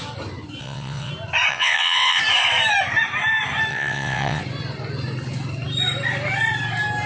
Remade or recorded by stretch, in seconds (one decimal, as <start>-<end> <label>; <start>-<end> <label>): 0.0-0.6 recorded; 0.6-1.1 remade; 1.1-1.5 recorded; 1.5-2.2 remade; 2.2-3.7 recorded; 3.7-4.4 remade; 4.4-7.1 recorded